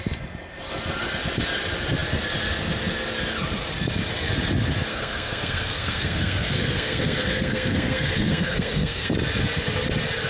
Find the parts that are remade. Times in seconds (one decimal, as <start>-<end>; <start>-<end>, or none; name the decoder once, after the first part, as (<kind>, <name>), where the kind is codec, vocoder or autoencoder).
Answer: 4.9-9.1 (codec, SNAC)